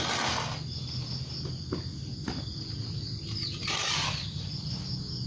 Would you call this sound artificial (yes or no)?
no